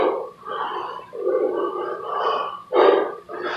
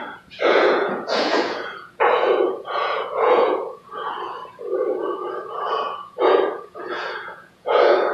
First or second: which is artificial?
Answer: second